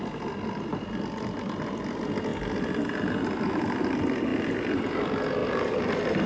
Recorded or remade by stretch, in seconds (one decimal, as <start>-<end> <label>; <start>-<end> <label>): 0.0-0.7 recorded; 0.7-1.8 remade; 1.8-4.3 recorded; 4.3-4.8 remade; 4.8-5.4 recorded; 5.4-6.3 remade